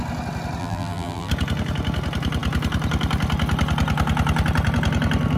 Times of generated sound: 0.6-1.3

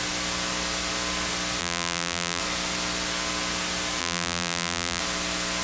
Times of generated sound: 1.6-2.4; 4.0-5.0

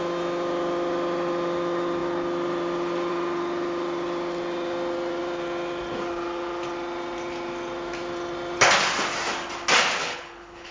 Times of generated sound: 10.0-10.7

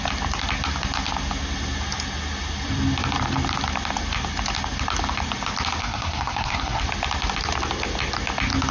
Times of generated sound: 5.8-6.8

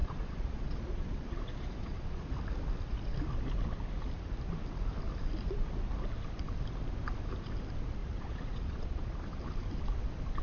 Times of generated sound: 0.0-2.3; 8.0-9.2

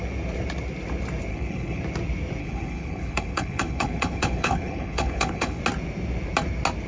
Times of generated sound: 1.3-1.8; 2.4-5.6

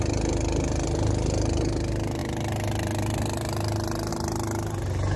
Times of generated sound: none

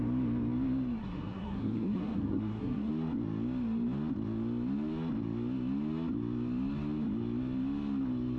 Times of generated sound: 1.0-2.9